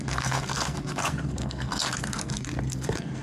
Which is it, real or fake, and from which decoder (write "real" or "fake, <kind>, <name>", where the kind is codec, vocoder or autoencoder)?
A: fake, codec, SNAC